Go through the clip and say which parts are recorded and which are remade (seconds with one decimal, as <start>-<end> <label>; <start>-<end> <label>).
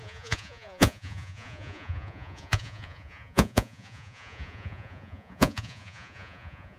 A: 0.0-6.8 remade